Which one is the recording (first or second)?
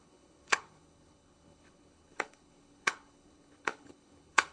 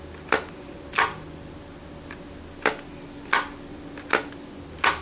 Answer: second